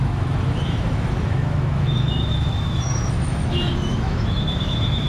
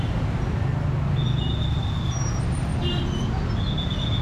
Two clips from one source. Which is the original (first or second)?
second